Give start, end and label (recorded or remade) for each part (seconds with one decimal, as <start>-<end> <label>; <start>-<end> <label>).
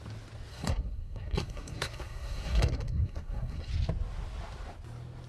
0.0-0.5 recorded; 0.5-3.7 remade; 3.7-5.3 recorded